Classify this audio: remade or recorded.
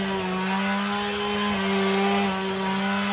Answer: recorded